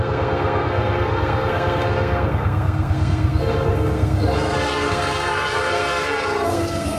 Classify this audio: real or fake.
fake